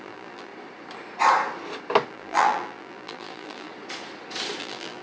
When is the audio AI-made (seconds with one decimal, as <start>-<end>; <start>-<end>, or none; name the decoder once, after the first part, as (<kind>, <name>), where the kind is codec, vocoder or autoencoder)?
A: 0.0-0.5 (vocoder, BigVGAN v2); 2.1-3.7; 4.6-5.0